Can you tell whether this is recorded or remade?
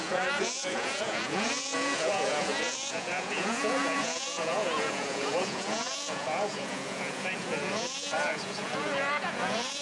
remade